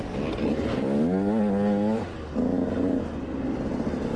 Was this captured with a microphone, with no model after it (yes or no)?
yes